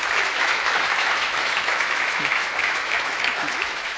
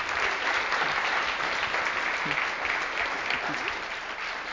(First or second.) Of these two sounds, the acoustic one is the second